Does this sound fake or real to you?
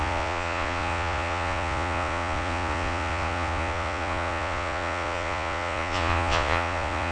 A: fake